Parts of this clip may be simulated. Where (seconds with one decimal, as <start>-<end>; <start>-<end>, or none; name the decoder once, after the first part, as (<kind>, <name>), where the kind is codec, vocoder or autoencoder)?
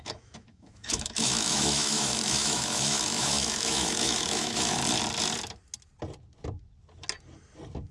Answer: 0.0-4.8 (autoencoder, DAC-VAE)